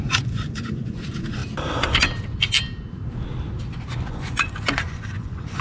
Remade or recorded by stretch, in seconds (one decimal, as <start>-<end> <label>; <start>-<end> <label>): 0.0-1.4 remade; 1.4-4.1 recorded; 4.1-5.6 remade